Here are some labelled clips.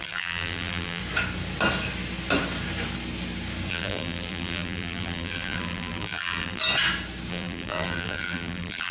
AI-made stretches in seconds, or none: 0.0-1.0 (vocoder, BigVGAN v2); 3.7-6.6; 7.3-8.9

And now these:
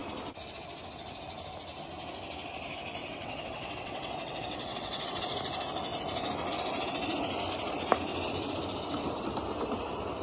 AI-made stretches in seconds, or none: 3.0-5.2 (vocoder, WaveNeXt)

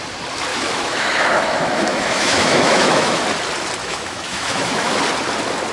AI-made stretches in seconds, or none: 0.5-3.2 (autoencoder, DAC-VAE); 3.8-5.0

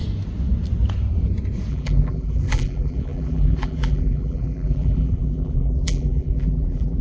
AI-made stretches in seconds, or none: 1.7-7.0 (vocoder, BigVGAN v2)